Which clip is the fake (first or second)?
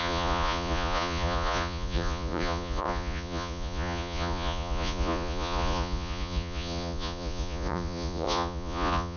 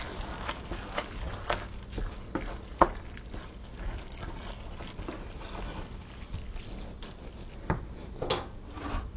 first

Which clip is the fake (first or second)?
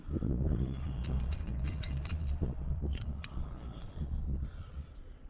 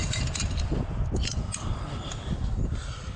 first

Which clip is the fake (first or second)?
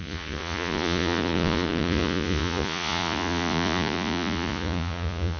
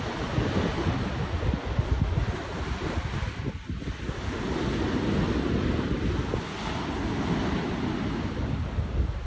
first